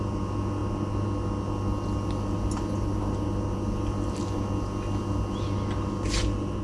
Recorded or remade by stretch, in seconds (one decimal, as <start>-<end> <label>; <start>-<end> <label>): 0.0-6.6 recorded